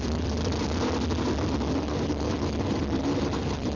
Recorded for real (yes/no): yes